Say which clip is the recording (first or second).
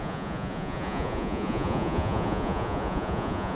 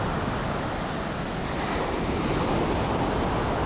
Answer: second